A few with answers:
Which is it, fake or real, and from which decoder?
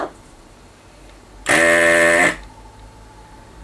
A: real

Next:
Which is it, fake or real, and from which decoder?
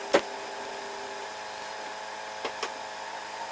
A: real